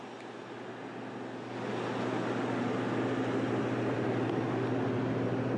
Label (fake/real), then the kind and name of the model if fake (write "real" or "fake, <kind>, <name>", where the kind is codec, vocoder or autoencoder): real